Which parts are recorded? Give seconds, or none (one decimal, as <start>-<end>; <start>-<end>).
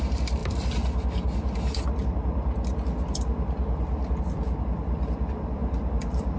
0.4-4.2